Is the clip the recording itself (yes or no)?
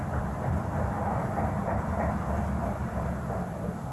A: no